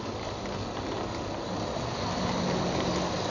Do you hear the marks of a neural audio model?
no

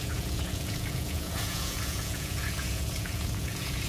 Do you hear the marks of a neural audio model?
yes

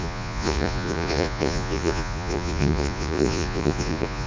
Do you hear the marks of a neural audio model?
yes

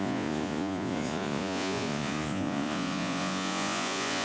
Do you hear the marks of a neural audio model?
yes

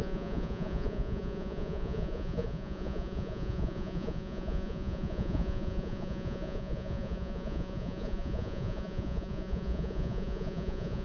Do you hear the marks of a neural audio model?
yes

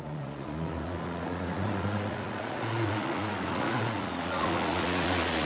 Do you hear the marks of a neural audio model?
yes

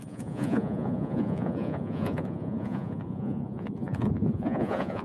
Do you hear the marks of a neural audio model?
yes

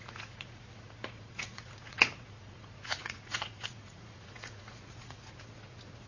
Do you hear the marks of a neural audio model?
yes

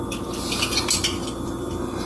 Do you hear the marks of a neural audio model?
no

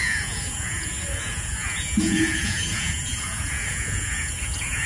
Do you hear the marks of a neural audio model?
yes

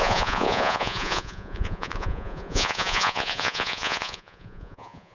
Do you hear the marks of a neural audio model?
yes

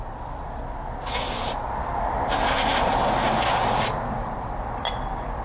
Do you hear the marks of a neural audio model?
no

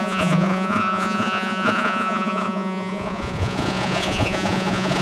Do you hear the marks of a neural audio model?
yes